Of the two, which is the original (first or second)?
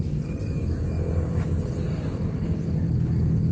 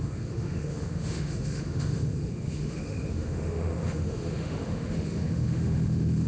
first